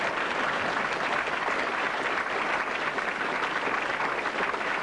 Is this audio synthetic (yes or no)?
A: no